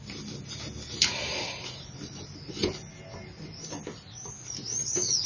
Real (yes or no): yes